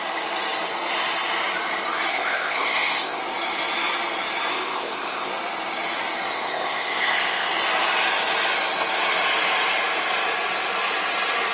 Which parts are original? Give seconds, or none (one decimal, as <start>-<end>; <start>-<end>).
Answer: 0.0-2.1; 3.2-4.5; 5.3-6.3; 7.5-11.5